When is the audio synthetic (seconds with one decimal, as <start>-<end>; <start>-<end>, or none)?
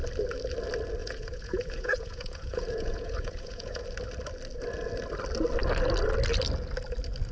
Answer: 1.0-3.8